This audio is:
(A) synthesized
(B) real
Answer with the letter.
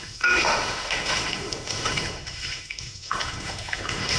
A